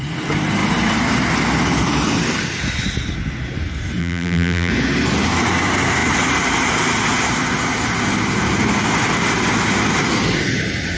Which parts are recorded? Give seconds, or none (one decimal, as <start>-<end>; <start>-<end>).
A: 0.0-4.0; 4.7-11.0